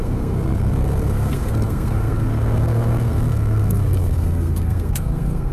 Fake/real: fake